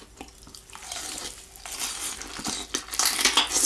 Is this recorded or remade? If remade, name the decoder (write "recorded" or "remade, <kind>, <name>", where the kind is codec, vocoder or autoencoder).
recorded